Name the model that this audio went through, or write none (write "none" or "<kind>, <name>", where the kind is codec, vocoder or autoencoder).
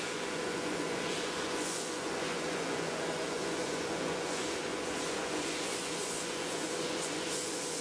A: vocoder, Vocos